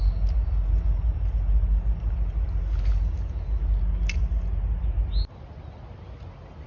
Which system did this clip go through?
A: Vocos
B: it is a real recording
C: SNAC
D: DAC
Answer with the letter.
B